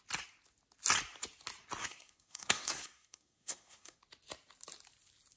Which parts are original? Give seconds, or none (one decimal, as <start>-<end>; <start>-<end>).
0.0-1.8; 4.0-5.4

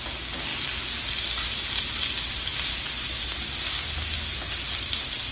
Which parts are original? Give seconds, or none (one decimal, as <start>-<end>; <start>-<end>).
0.0-5.3

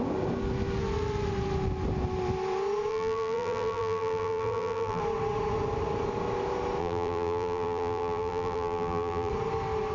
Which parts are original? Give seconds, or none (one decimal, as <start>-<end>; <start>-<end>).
0.0-2.9; 5.0-6.8; 9.3-9.9

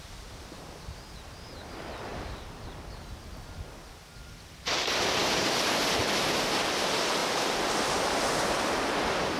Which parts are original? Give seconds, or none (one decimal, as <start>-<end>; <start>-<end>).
0.0-2.1; 2.6-7.2; 7.7-9.4

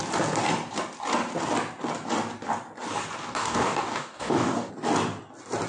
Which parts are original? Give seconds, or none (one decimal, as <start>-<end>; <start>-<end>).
0.0-3.2; 4.7-5.7

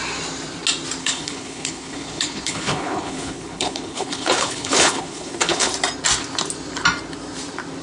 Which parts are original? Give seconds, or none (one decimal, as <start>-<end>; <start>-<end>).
0.0-1.0; 5.7-7.8